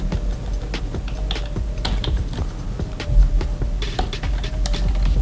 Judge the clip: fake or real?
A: real